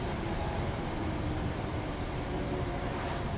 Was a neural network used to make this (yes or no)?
yes